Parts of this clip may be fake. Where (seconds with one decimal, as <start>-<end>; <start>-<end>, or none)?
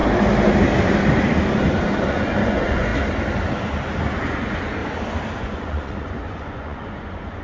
2.1-2.9; 4.2-4.8; 5.4-7.4